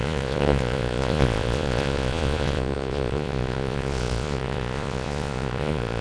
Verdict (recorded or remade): remade